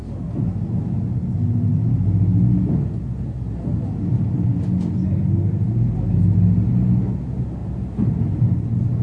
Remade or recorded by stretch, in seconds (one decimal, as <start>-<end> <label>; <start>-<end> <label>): 0.0-9.0 recorded